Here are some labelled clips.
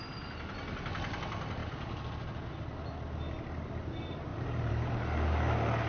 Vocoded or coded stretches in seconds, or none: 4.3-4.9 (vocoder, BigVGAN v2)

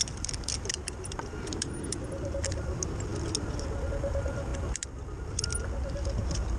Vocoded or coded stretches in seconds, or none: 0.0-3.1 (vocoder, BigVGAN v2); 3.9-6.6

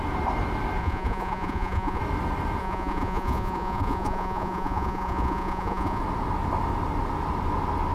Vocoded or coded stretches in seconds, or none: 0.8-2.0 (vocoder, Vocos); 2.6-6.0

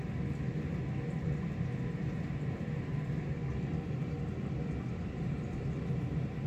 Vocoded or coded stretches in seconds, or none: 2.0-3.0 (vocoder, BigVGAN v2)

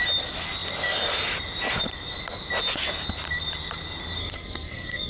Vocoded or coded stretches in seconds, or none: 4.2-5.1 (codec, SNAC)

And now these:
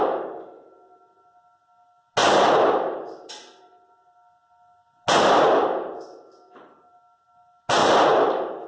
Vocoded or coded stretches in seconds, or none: none